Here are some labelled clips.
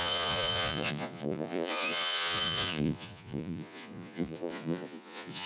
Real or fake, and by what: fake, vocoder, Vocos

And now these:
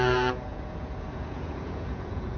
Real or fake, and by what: fake, vocoder, Vocos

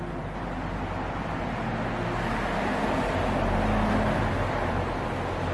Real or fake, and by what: real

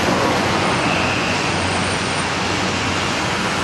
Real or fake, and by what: fake, vocoder, Vocos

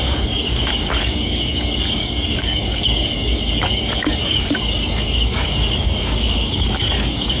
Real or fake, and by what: fake, codec, DAC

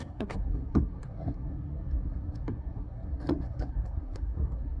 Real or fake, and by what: fake, codec, SNAC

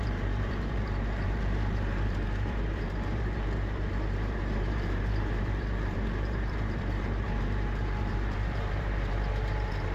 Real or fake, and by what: fake, vocoder, BigVGAN v2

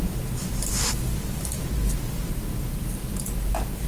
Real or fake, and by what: real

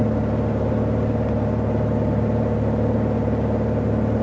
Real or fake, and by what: real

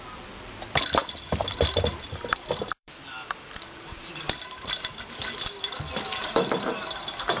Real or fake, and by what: fake, vocoder, BigVGAN v2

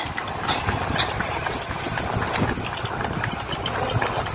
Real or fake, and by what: real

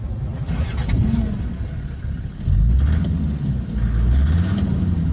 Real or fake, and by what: real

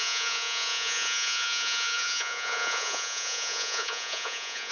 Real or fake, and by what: fake, vocoder, Vocos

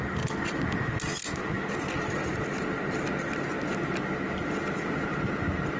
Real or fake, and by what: real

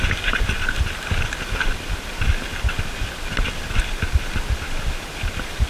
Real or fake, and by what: real